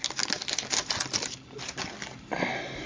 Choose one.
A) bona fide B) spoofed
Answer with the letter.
A